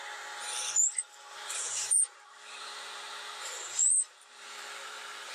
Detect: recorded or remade remade